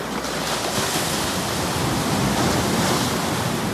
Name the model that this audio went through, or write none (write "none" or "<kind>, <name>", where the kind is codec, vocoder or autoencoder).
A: none